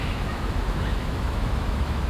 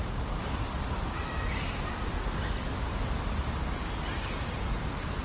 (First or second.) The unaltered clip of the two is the second